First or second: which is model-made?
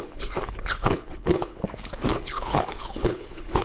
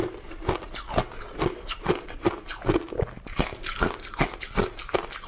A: first